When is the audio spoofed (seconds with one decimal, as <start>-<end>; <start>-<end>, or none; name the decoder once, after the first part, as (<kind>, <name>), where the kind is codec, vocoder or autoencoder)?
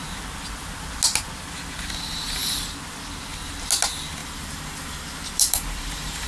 4.2-6.3 (vocoder, BigVGAN v2)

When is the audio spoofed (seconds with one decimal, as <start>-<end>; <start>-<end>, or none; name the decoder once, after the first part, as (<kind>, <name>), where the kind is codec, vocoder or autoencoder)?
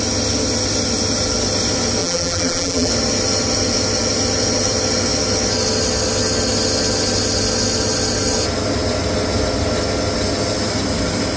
2.0-2.9 (vocoder, BigVGAN v2)